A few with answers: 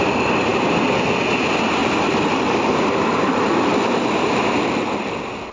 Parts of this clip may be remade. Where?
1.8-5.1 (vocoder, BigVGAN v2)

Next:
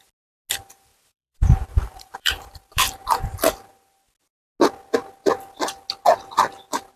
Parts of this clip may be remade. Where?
0.9-3.2 (vocoder, BigVGAN v2)

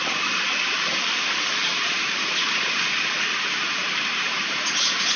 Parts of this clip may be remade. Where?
1.6-4.7 (vocoder, BigVGAN v2)

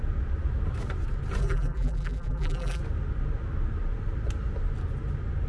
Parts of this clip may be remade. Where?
1.4-2.8 (vocoder, BigVGAN v2)

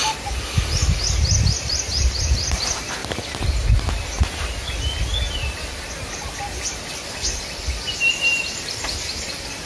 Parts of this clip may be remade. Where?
0.0-0.8 (vocoder, BigVGAN v2); 1.4-3.0; 5.3-9.7

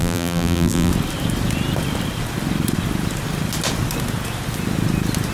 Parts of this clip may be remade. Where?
0.0-0.9 (vocoder, BigVGAN v2)

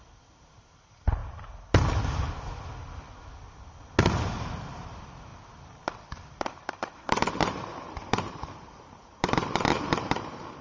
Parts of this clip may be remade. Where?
0.0-1.2 (vocoder, BigVGAN v2); 4.1-10.6

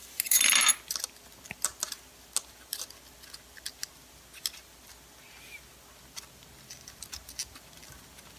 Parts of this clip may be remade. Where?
none